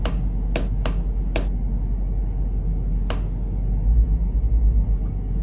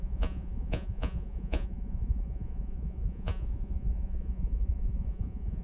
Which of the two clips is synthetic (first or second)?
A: second